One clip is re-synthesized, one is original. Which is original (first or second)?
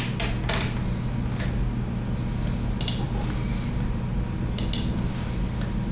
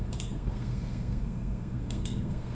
first